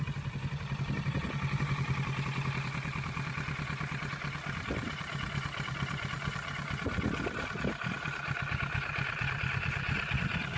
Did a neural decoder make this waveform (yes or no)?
no